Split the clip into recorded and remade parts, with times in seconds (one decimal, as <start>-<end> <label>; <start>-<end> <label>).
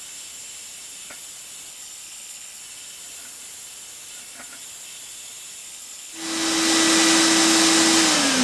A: 0.0-1.7 recorded; 1.7-2.6 remade; 2.6-5.6 recorded; 5.6-6.1 remade; 6.1-8.4 recorded